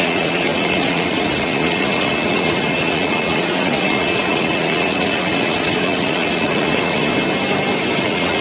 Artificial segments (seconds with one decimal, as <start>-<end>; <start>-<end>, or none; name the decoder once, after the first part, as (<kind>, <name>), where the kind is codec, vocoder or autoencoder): 0.0-7.1 (vocoder, Vocos); 8.0-8.4